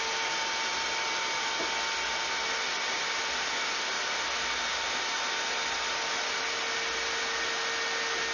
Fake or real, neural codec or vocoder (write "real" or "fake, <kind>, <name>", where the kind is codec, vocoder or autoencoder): real